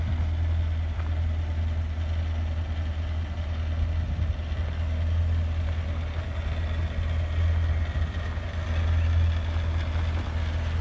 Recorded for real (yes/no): yes